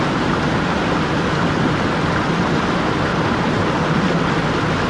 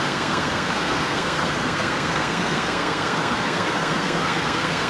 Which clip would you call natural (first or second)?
first